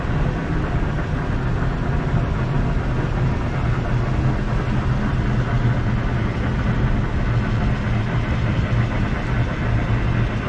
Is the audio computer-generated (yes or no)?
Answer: no